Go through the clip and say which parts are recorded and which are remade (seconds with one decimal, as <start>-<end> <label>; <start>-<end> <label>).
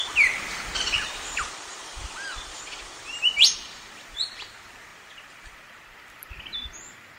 0.0-0.7 recorded; 0.7-3.2 remade; 3.2-4.9 recorded; 4.9-7.2 remade